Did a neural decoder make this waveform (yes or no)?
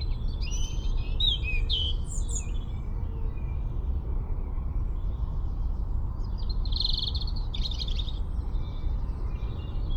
no